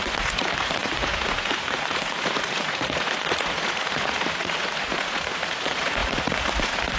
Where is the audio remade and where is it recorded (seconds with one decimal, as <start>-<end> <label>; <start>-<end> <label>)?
0.0-7.0 remade